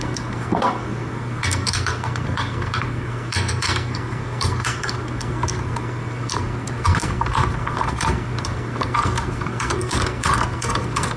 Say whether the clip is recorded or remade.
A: remade